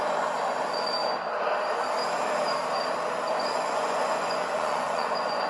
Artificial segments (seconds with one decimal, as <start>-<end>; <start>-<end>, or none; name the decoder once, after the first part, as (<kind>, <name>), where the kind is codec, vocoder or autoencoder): 0.0-1.0 (vocoder, Vocos); 3.3-5.5